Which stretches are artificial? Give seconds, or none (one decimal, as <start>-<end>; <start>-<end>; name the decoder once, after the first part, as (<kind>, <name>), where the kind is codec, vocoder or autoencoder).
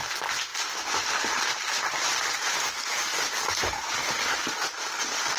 none